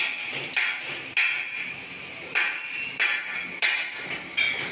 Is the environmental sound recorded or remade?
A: recorded